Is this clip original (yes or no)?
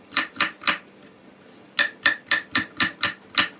yes